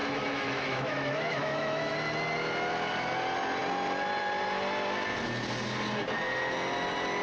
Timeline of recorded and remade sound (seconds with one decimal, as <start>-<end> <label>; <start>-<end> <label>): 0.0-1.9 remade; 1.9-7.2 recorded